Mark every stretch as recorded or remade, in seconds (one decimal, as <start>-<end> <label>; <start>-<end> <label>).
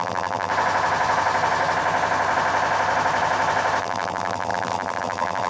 0.0-0.5 remade; 0.5-3.8 recorded; 3.8-5.5 remade